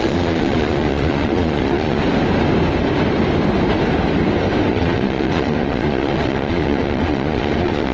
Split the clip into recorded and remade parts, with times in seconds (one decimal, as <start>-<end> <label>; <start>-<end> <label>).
0.0-2.0 remade; 2.0-4.7 recorded; 4.7-7.9 remade